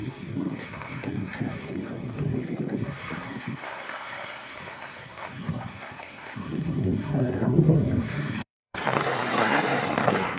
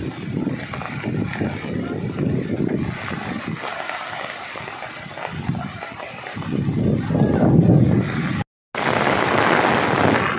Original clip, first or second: second